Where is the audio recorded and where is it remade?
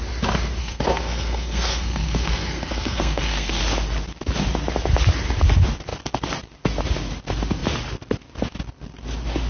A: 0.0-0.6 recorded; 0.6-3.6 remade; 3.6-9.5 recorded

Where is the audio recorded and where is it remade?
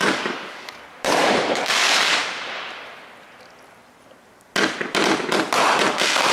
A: 0.0-2.2 remade; 2.2-6.3 recorded